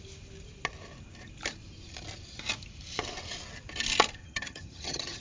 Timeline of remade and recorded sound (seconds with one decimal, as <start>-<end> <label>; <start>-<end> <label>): 0.0-4.2 recorded; 4.2-5.2 remade